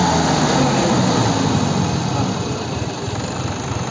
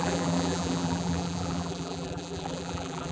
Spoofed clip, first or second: second